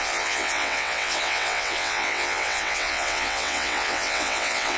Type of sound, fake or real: fake